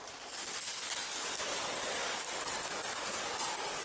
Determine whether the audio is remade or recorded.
recorded